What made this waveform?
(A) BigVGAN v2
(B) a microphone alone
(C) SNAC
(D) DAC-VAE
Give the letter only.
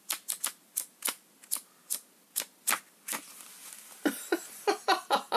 B